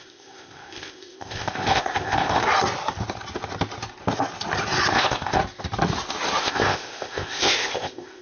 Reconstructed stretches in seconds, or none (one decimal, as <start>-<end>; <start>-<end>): 0.0-2.4; 4.9-5.4; 6.4-8.2